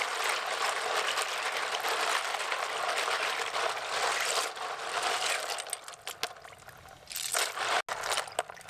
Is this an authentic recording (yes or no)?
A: yes